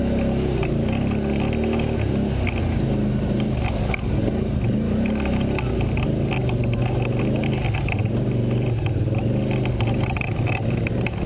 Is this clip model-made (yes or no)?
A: no